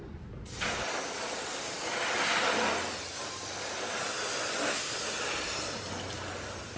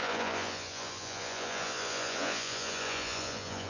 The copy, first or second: second